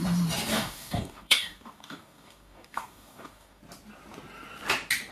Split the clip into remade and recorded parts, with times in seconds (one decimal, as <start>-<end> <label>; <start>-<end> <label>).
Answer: 0.0-0.5 recorded; 0.5-3.6 remade; 3.6-5.1 recorded